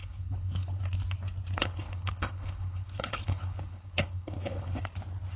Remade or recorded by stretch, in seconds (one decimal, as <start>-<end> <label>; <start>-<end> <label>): 0.0-0.8 remade; 0.8-1.6 recorded; 1.6-4.8 remade; 4.8-5.4 recorded